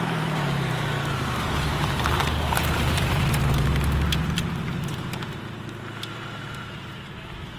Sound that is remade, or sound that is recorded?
remade